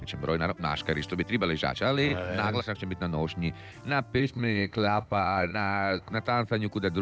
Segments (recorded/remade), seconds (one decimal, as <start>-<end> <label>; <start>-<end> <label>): 0.0-4.2 recorded; 4.2-6.1 remade; 6.1-7.0 recorded